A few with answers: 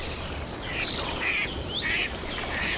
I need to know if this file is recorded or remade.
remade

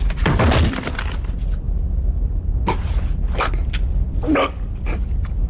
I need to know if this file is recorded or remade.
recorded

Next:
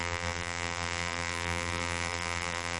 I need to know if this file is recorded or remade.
remade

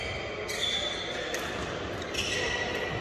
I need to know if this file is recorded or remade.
recorded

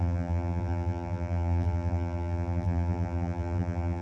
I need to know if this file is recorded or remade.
remade